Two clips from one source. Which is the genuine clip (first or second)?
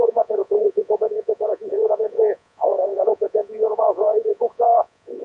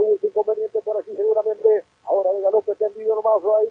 second